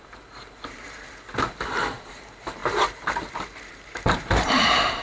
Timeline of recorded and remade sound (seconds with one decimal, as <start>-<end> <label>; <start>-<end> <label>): 0.0-2.6 remade; 2.6-3.7 recorded; 3.7-5.0 remade